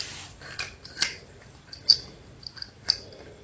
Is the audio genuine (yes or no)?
yes